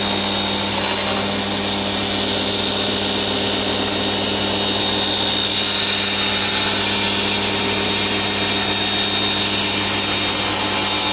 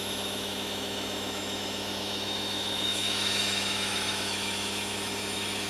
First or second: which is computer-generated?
second